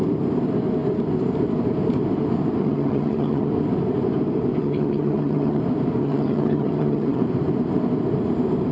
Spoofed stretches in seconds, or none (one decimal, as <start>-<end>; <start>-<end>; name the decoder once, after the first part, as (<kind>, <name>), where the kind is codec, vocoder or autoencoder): 2.6-3.5 (vocoder, HiFi-GAN); 4.6-5.6; 6.0-7.2